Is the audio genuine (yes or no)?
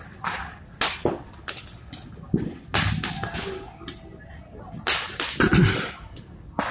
yes